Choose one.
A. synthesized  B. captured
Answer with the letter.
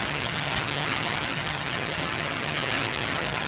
A